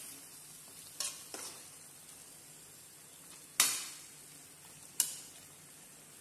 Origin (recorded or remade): recorded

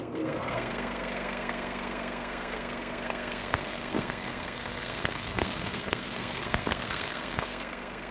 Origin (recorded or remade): remade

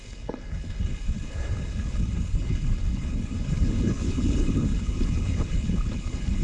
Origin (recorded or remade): remade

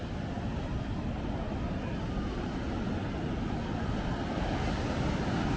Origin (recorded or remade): recorded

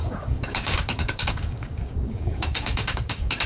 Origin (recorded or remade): remade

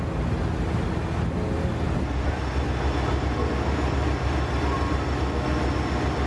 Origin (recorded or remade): recorded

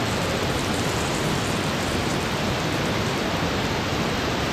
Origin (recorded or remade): recorded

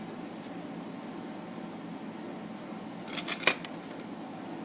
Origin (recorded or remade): recorded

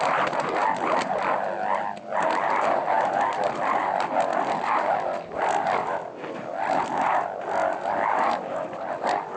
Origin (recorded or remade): recorded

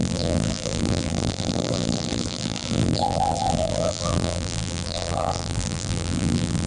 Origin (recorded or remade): remade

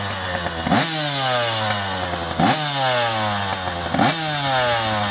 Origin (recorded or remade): recorded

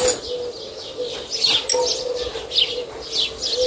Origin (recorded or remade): recorded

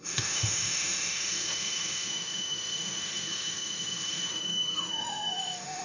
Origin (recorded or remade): remade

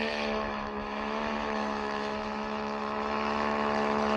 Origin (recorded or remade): remade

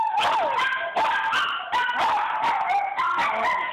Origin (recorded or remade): recorded